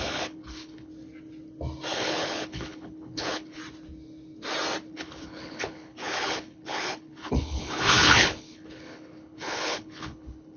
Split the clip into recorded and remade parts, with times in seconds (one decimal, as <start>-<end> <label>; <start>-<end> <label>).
0.0-0.9 remade; 0.9-1.9 recorded; 1.9-3.6 remade; 3.6-4.9 recorded; 4.9-10.6 remade